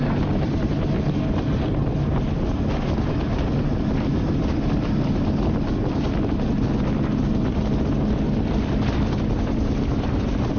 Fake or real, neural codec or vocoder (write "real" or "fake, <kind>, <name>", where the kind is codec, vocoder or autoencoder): real